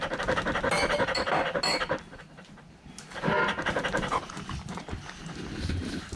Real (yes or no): yes